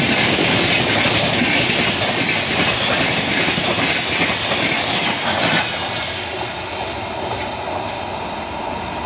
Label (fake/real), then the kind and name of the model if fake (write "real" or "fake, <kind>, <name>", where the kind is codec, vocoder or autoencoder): real